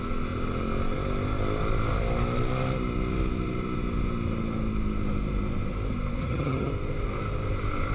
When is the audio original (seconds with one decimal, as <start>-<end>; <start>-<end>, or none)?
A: 0.0-6.2; 6.7-7.9